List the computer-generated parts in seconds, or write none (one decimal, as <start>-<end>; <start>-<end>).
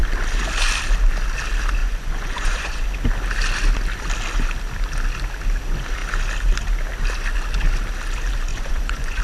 1.8-2.8; 8.5-9.2